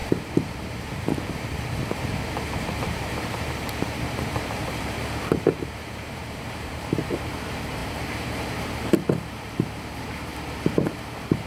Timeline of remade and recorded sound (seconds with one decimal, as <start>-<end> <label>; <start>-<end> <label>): 0.0-10.3 remade; 10.3-11.5 recorded